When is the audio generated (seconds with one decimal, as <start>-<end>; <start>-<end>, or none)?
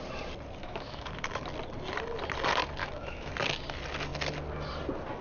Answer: 0.6-1.1; 2.8-3.3